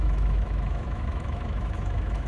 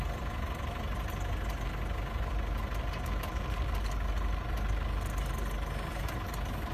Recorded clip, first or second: second